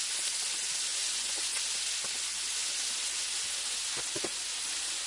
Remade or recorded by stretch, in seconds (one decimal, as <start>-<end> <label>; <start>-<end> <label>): 0.0-0.9 recorded; 0.9-1.6 remade; 1.6-5.1 recorded